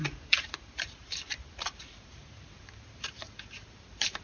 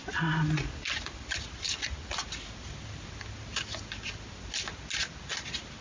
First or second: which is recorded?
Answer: second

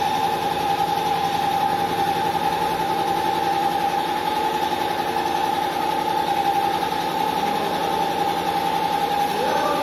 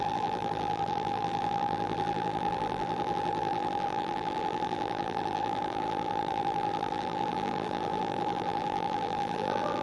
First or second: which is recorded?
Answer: first